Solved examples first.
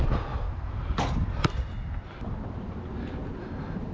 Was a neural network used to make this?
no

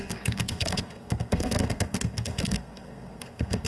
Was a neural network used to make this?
yes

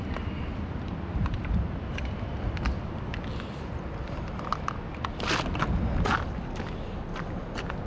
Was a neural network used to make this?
no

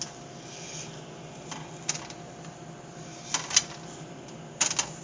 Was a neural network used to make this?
no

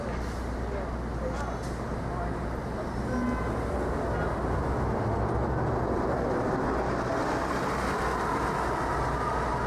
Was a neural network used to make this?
no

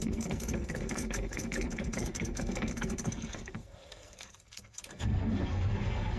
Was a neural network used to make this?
yes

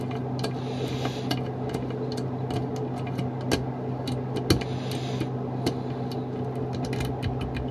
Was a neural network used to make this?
no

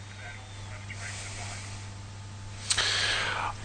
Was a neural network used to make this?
no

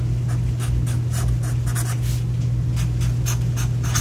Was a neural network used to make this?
no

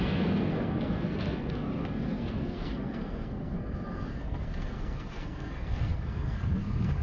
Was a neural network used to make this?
yes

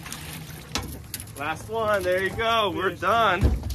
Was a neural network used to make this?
no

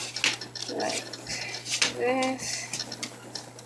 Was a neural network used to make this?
no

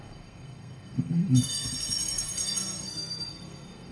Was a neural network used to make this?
yes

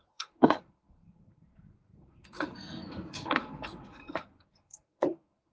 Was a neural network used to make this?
yes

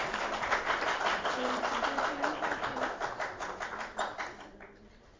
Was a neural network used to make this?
no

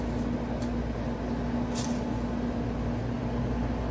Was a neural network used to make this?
no